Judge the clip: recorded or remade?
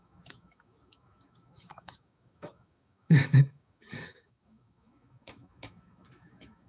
remade